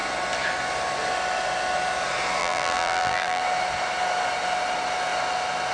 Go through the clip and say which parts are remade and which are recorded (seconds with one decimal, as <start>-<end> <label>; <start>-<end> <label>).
0.0-2.4 recorded; 2.4-3.4 remade; 3.4-5.7 recorded